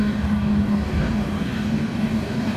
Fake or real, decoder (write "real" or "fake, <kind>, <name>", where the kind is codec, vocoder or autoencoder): fake, codec, DAC